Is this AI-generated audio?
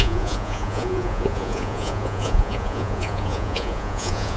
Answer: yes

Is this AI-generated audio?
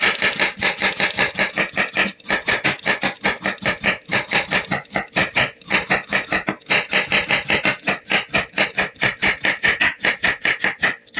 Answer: no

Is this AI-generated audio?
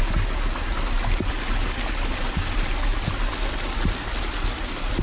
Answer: no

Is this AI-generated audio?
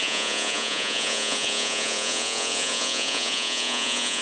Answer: yes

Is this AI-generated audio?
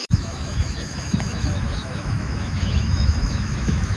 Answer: yes